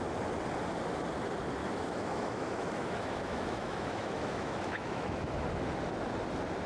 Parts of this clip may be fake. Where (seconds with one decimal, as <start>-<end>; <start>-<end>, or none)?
1.6-5.2